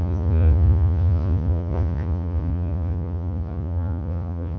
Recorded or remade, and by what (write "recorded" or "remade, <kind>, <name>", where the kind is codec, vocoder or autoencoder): remade, vocoder, Vocos